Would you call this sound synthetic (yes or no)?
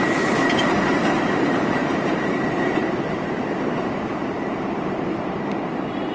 yes